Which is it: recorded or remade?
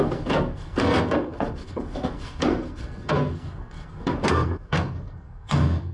remade